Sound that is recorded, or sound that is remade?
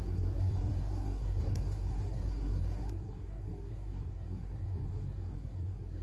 remade